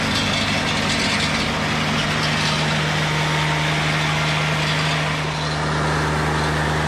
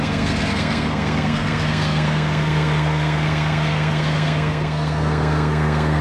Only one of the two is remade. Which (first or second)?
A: second